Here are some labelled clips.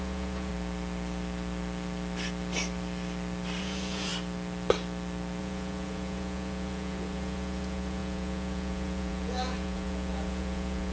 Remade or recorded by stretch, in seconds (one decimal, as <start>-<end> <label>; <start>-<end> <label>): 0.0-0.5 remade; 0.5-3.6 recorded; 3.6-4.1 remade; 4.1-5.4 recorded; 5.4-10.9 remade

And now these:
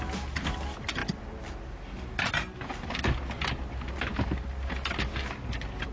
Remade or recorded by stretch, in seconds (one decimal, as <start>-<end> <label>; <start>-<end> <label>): 0.0-5.9 recorded

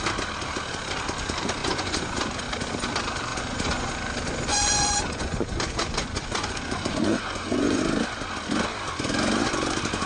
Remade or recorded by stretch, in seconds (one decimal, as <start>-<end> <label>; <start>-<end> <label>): 0.0-1.6 recorded; 1.6-2.4 remade; 2.4-3.3 recorded; 3.3-3.9 remade; 3.9-4.5 recorded; 4.5-7.8 remade; 7.8-10.1 recorded

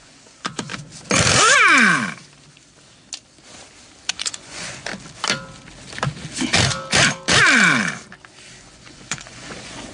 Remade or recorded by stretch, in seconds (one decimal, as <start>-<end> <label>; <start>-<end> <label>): 0.0-0.7 remade; 0.7-4.1 recorded; 4.1-4.9 remade; 4.9-8.6 recorded; 8.6-9.9 remade